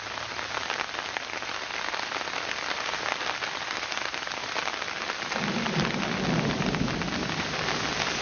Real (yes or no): yes